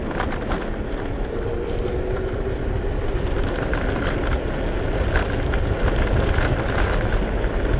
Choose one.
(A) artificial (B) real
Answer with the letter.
B